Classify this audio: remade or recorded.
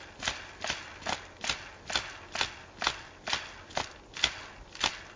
recorded